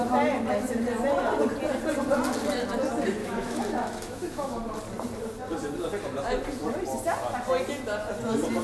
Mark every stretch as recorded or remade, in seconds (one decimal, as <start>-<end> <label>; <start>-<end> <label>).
0.0-3.2 recorded; 3.2-4.6 remade; 4.6-8.6 recorded